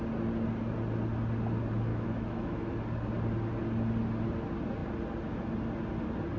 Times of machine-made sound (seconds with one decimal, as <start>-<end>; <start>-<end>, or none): 1.9-2.7